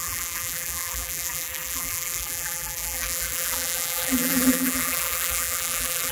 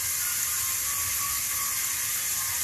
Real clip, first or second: second